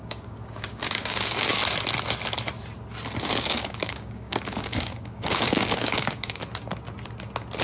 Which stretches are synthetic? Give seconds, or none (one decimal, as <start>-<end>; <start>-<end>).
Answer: 0.0-1.6; 3.2-6.4

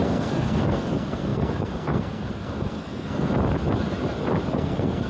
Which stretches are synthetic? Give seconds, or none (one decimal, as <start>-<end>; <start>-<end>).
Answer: 0.0-3.3; 4.5-5.1

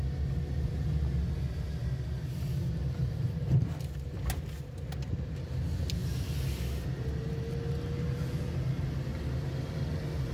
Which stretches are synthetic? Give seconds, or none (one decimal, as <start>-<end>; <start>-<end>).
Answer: 1.8-3.7

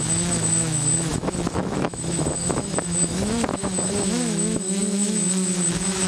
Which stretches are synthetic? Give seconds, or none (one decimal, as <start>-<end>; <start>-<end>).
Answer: 0.0-6.1

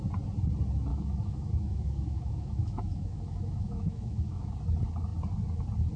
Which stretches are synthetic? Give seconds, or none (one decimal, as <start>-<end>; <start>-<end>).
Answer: 0.9-4.5

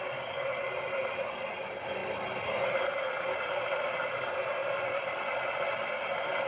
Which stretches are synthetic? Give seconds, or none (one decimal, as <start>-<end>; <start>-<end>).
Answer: none

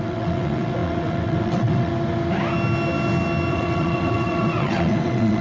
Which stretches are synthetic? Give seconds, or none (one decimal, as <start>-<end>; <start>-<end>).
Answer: 0.0-1.9; 3.5-5.4

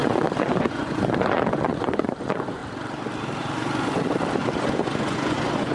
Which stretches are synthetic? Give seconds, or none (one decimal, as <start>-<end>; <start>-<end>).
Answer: 0.0-2.6; 4.6-5.7